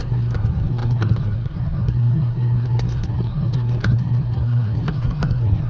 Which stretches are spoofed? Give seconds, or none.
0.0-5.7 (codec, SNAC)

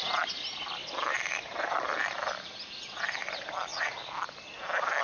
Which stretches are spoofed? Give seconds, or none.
0.0-3.0 (vocoder, BigVGAN v2)

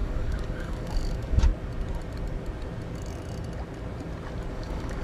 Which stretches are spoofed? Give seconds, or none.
0.0-1.5 (codec, DAC); 4.5-5.0

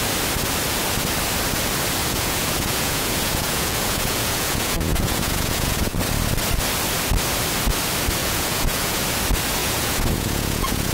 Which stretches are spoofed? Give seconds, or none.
2.0-6.0 (vocoder, Vocos); 8.2-9.0; 9.6-10.9

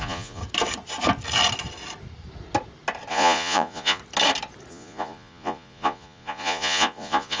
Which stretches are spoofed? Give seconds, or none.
0.0-0.4 (vocoder, Vocos); 3.1-4.0; 4.7-7.4

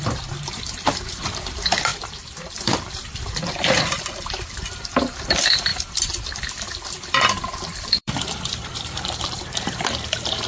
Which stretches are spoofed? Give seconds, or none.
0.0-10.5 (vocoder, BigVGAN v2)

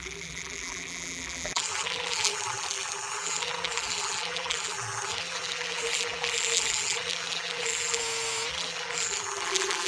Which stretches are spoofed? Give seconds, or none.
0.0-8.0 (vocoder, BigVGAN v2); 8.5-9.9

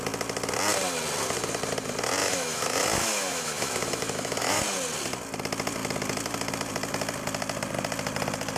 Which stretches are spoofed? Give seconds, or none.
2.2-4.6 (autoencoder, DAC-VAE)